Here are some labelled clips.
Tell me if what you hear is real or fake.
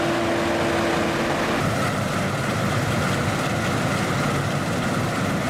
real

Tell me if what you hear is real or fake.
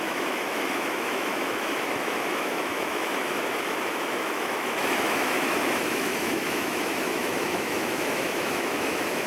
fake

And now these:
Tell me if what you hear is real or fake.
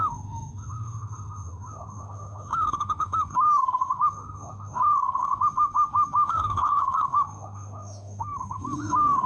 fake